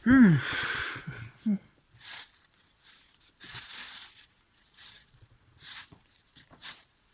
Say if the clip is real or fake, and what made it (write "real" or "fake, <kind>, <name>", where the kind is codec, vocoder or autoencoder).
fake, vocoder, Vocos